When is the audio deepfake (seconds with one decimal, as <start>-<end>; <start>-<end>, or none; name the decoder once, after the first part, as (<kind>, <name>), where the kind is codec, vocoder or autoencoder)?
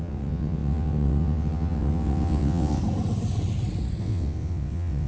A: 0.0-2.8 (vocoder, WaveNeXt); 4.0-5.1